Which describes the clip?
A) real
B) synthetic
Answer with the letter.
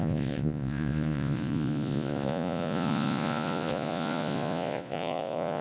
B